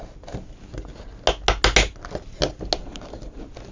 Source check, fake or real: real